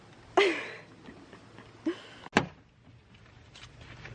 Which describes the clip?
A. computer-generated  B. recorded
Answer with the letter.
B